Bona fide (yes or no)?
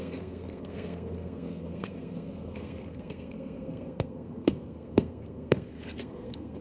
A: no